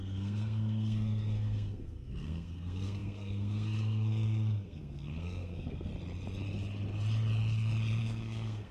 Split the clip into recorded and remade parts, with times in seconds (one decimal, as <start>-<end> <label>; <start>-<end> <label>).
0.0-5.9 remade; 5.9-8.0 recorded; 8.0-8.7 remade